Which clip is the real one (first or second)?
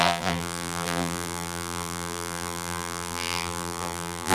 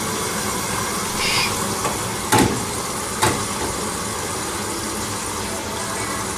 second